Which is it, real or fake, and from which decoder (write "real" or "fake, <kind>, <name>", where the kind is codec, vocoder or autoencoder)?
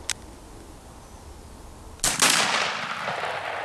real